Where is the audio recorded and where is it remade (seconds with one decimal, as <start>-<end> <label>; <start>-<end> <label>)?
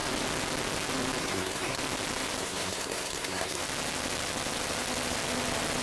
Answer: 0.0-1.2 recorded; 1.2-1.8 remade; 1.8-2.4 recorded; 2.4-3.6 remade; 3.6-5.8 recorded